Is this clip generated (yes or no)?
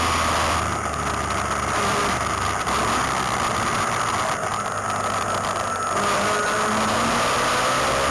no